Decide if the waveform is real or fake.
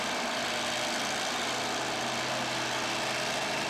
real